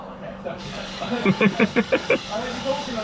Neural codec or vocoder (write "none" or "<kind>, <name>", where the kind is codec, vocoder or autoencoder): codec, DAC